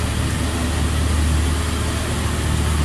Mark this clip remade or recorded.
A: recorded